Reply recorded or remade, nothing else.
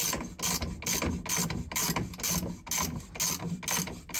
recorded